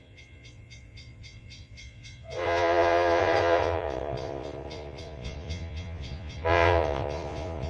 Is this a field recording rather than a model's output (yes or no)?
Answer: no